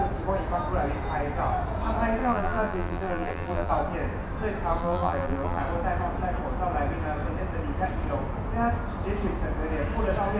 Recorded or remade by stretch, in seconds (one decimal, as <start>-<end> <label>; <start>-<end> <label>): 0.0-2.2 recorded; 2.2-3.7 remade; 3.7-4.8 recorded; 4.8-5.6 remade; 5.6-10.4 recorded